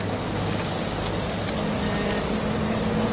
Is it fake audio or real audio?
real